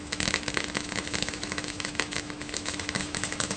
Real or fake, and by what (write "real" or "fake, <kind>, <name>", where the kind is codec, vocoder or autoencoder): fake, autoencoder, DAC-VAE